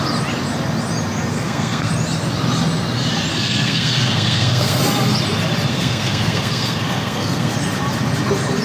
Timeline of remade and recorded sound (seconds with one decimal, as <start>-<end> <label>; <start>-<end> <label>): 0.0-1.3 recorded; 1.3-1.9 remade; 1.9-3.3 recorded; 3.3-4.8 remade; 4.8-5.7 recorded; 5.7-7.5 remade; 7.5-8.6 recorded